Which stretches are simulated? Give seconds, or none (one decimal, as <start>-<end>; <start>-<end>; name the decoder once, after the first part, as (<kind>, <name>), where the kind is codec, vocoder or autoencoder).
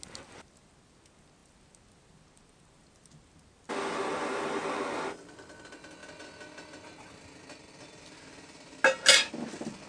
none